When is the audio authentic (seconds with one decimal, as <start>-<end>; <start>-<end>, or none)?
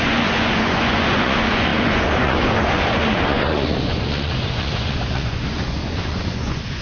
none